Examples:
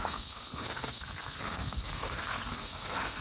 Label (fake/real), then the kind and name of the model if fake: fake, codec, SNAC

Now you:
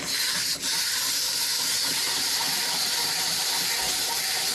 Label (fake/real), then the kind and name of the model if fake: real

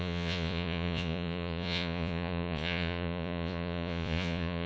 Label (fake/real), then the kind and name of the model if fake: fake, vocoder, Vocos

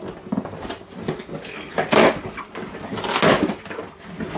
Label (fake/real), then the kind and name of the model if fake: real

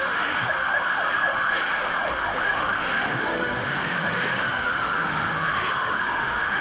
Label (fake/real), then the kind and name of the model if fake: fake, autoencoder, DAC-VAE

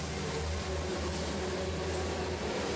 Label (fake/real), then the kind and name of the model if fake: real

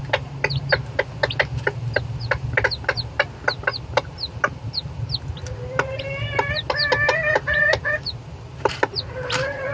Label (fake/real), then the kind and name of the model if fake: real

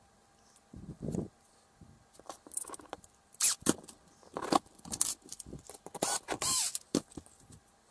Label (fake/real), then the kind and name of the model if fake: real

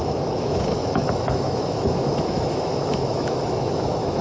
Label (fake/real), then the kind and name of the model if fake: fake, autoencoder, DAC-VAE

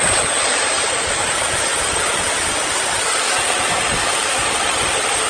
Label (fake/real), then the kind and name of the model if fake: real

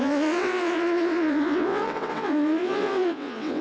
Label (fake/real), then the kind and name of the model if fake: fake, vocoder, WaveNeXt